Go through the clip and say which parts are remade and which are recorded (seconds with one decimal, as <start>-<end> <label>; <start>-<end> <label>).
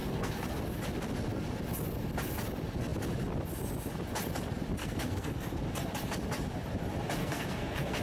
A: 0.0-0.6 remade; 0.6-4.8 recorded; 4.8-5.6 remade; 5.6-7.2 recorded; 7.2-8.0 remade